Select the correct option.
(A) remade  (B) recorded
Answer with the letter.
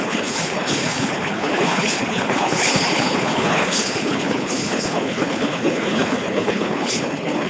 A